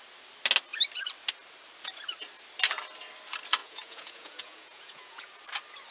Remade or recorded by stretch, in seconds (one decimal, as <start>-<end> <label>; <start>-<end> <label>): 0.0-3.6 recorded; 3.6-5.4 remade; 5.4-5.9 recorded